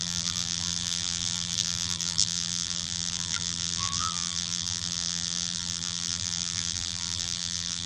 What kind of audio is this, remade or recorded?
remade